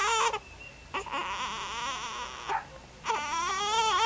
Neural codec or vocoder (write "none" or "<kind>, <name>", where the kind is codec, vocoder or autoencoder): none